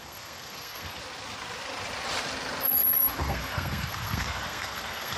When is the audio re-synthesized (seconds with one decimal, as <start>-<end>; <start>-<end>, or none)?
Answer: 0.0-1.0; 3.2-5.2